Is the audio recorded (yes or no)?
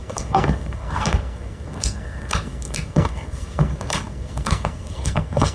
no